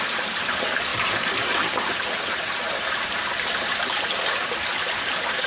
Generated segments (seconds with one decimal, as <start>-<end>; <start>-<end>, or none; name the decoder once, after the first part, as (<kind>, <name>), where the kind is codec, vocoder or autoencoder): 0.9-4.2 (vocoder, BigVGAN v2)